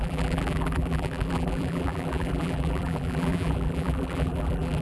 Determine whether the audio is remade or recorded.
remade